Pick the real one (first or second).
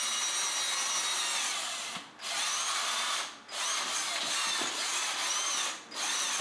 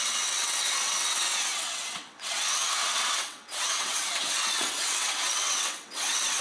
first